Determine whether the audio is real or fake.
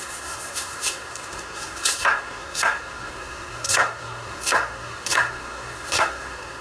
fake